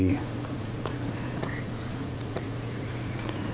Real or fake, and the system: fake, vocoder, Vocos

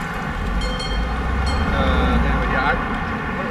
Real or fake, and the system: real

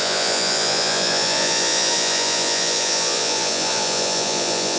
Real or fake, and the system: fake, vocoder, Vocos